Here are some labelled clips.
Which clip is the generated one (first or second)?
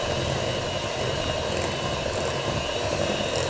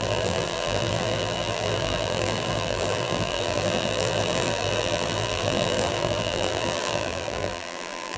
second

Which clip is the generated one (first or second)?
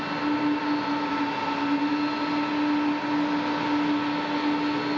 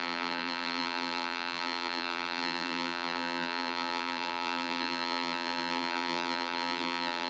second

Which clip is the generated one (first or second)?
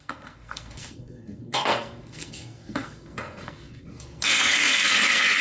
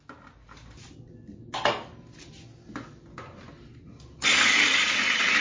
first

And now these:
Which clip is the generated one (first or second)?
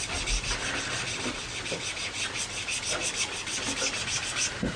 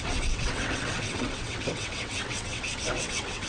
second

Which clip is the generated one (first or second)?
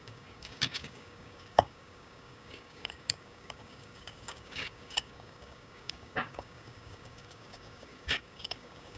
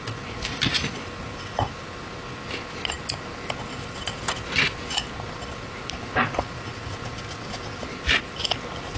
first